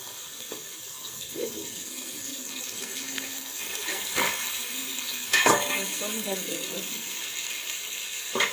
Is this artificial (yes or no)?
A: yes